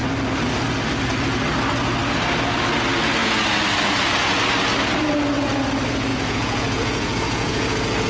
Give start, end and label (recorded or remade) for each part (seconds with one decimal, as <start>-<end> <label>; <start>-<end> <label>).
0.0-6.1 recorded; 6.1-8.1 remade